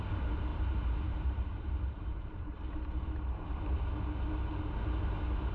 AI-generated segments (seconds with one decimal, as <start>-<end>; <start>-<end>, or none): 0.5-3.8